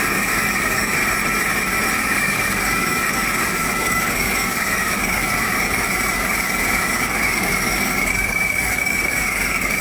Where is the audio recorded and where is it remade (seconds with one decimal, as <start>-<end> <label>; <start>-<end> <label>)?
0.0-1.0 remade; 1.0-2.0 recorded; 2.0-9.8 remade